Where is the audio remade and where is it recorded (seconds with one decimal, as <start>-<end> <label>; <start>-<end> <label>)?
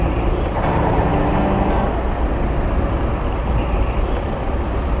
0.0-1.1 remade; 1.1-3.5 recorded; 3.5-5.0 remade